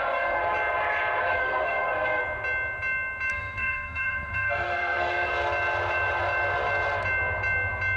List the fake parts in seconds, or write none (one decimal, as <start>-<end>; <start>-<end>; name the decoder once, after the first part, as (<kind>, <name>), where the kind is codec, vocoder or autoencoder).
0.0-0.4 (codec, SNAC); 1.2-2.2; 3.3-5.3

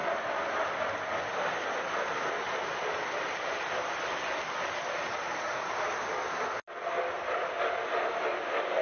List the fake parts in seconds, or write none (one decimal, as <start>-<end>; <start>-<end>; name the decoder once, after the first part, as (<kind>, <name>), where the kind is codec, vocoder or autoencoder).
none

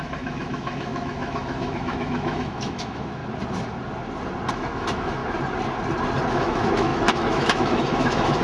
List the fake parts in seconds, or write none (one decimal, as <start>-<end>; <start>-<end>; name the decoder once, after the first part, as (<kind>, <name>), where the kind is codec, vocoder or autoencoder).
0.0-3.2 (autoencoder, DAC-VAE); 4.5-5.2; 6.3-8.4

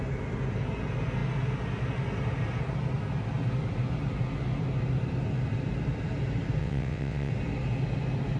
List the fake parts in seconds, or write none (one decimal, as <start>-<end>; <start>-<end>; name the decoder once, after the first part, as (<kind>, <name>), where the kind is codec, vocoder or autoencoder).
6.6-7.3 (vocoder, WaveNeXt)

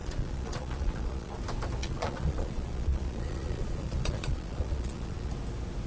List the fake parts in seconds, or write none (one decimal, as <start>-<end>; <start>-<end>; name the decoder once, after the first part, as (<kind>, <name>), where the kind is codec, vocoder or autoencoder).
0.0-1.4 (vocoder, Vocos); 1.8-5.3

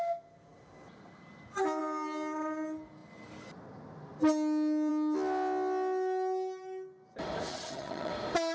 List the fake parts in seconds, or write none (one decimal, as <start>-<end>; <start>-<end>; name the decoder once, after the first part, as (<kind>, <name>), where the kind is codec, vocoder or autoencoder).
7.5-8.1 (vocoder, HiFi-GAN)

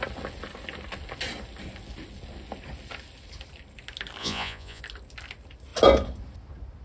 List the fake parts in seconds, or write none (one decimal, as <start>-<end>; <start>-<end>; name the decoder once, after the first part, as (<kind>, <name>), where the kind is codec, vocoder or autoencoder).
4.2-4.8 (vocoder, Vocos)